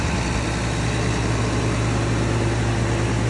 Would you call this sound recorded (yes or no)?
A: yes